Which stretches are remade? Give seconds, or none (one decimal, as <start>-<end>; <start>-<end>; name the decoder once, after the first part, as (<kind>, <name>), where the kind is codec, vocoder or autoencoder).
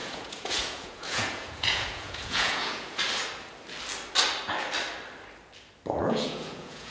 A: 0.0-3.0 (vocoder, Vocos); 6.0-6.9